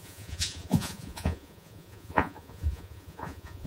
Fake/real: fake